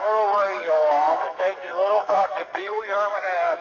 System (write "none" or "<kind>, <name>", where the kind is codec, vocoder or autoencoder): codec, SNAC